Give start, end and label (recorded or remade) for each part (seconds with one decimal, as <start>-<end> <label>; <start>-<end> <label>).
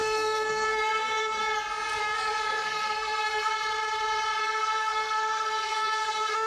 0.0-1.4 remade; 1.4-2.0 recorded; 2.0-3.6 remade; 3.6-4.4 recorded; 4.4-6.5 remade